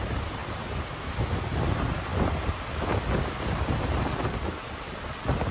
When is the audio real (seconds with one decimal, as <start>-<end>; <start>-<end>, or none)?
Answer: 0.0-5.5

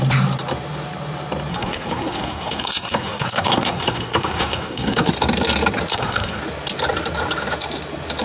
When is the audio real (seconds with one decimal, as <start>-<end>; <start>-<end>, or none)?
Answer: 0.0-1.5; 5.1-5.9; 6.4-8.2

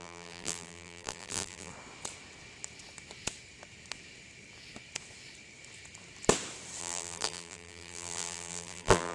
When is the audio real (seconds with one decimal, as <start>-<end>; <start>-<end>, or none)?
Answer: 1.7-6.8